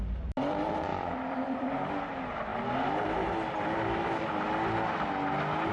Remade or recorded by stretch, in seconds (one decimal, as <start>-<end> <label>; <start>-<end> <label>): 0.0-0.9 recorded; 0.9-1.9 remade; 1.9-5.7 recorded